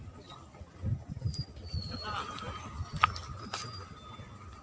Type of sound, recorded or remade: recorded